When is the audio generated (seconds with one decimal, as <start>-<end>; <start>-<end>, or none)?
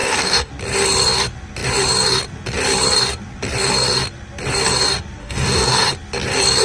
0.0-0.5; 5.2-5.9